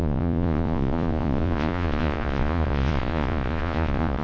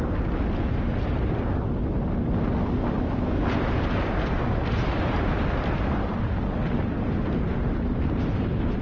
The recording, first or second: second